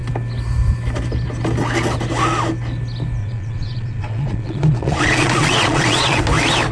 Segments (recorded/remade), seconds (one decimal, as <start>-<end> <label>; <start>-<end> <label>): 0.0-3.2 recorded; 3.2-6.2 remade; 6.2-6.7 recorded